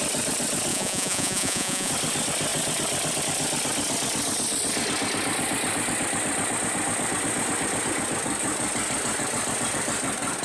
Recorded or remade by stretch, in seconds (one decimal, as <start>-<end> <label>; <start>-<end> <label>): 0.0-0.7 recorded; 0.7-1.9 remade; 1.9-10.4 recorded